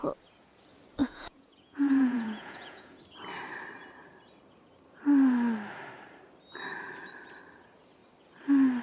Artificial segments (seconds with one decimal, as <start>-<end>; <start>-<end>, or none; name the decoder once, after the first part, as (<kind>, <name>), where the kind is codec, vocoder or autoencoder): 1.0-3.0 (vocoder, Vocos)